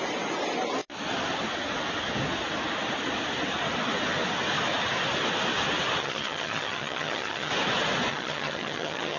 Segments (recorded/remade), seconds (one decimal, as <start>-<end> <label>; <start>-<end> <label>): 0.0-6.0 recorded; 6.0-7.5 remade; 7.5-8.1 recorded; 8.1-9.2 remade